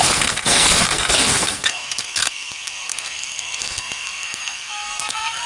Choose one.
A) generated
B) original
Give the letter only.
A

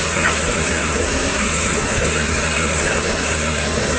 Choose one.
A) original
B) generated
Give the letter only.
B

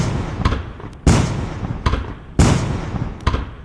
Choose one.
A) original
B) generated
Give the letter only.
A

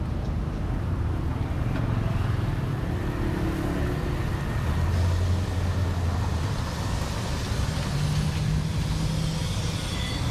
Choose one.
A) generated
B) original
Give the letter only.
B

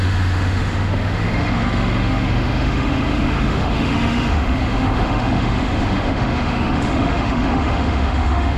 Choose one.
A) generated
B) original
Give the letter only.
A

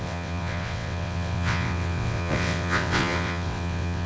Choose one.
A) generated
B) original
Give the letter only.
A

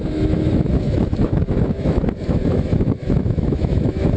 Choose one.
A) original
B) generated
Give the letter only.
B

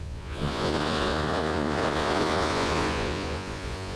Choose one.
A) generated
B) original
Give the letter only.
A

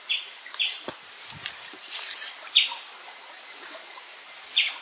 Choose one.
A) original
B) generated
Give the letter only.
B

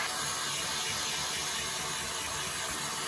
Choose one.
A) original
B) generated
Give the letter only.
A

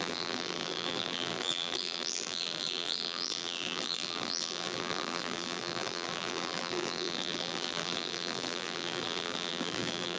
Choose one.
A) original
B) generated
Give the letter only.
B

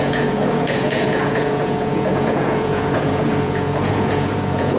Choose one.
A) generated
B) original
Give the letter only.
A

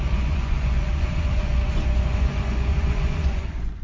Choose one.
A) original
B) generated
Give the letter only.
B